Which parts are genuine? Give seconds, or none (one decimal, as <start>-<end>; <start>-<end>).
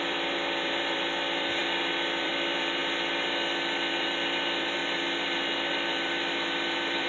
2.8-3.9; 4.8-5.7